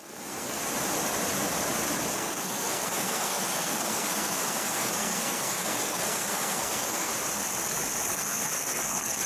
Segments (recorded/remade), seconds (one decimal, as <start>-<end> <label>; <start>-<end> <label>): 0.0-0.6 remade; 0.6-2.1 recorded; 2.1-7.1 remade; 7.1-8.1 recorded; 8.1-9.3 remade